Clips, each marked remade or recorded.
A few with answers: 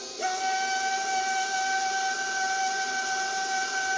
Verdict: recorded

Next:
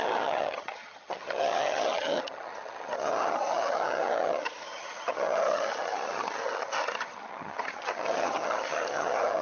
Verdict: remade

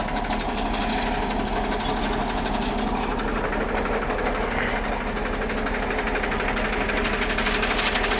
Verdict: recorded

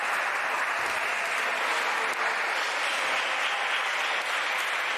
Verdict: recorded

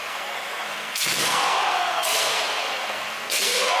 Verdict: remade